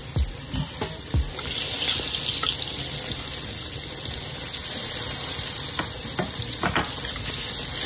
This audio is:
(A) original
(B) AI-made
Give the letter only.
A